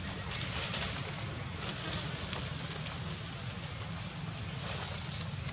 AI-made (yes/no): no